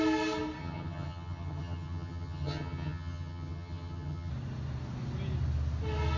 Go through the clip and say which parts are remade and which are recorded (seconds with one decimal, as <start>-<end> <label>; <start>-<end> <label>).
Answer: 0.0-0.6 recorded; 0.6-4.3 remade; 4.3-6.2 recorded